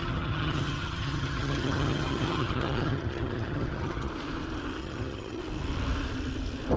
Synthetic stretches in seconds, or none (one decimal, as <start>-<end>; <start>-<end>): 0.0-4.1; 4.8-5.4